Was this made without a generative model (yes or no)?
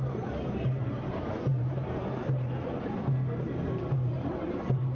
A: no